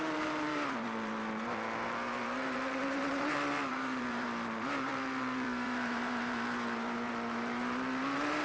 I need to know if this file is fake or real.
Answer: fake